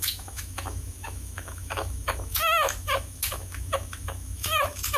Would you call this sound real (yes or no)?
no